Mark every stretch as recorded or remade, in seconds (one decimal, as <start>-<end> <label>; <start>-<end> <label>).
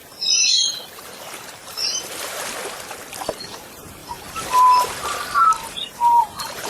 0.0-0.6 recorded; 0.6-2.6 remade; 2.6-3.4 recorded; 3.4-6.7 remade